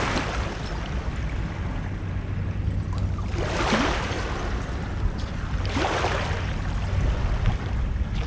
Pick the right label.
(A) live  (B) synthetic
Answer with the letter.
A